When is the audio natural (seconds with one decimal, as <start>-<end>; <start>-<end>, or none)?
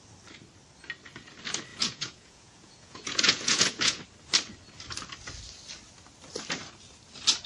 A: 0.0-1.7; 4.0-7.5